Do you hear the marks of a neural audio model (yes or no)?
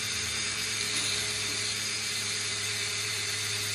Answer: yes